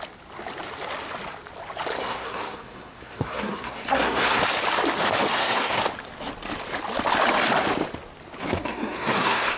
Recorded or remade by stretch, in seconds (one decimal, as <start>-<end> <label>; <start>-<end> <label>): 0.0-1.9 recorded; 1.9-4.4 remade; 4.4-5.3 recorded; 5.3-5.8 remade; 5.8-8.6 recorded; 8.6-9.6 remade